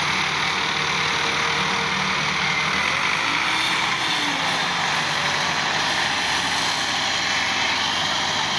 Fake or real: real